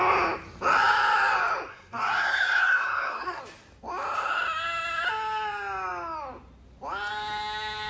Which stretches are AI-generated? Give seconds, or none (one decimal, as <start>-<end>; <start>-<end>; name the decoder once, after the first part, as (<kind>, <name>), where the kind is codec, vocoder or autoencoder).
1.7-3.4 (codec, SNAC)